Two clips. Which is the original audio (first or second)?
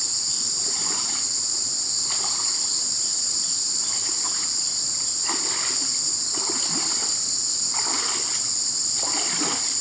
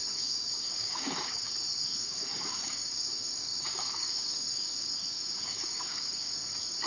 first